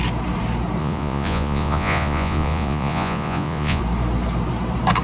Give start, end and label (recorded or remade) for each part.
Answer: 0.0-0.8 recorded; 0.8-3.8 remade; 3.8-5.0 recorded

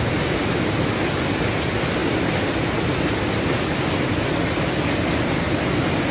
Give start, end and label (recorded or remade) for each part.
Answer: 0.0-6.1 recorded

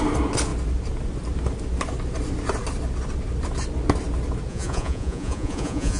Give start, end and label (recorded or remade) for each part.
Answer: 0.0-4.5 recorded; 4.5-6.0 remade

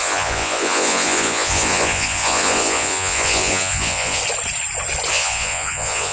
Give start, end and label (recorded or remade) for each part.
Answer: 0.0-4.2 remade; 4.2-5.1 recorded; 5.1-6.1 remade

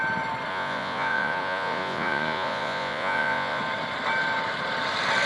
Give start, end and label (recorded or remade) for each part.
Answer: 0.0-0.5 recorded; 0.5-3.6 remade; 3.6-5.3 recorded

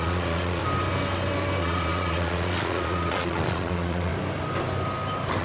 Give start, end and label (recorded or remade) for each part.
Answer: 0.0-0.6 remade; 0.6-1.6 recorded; 1.6-4.1 remade; 4.1-5.4 recorded